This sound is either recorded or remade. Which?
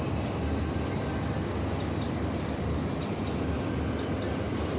recorded